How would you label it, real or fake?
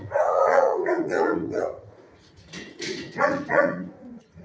fake